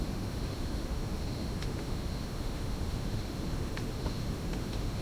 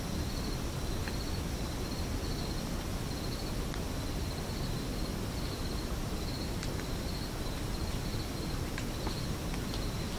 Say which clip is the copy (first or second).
first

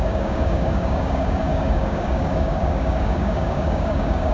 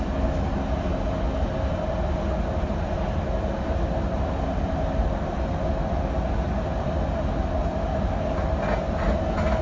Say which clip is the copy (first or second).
first